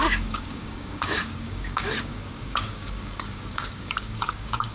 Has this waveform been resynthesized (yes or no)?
yes